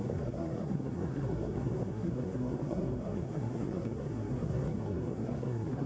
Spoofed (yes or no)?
yes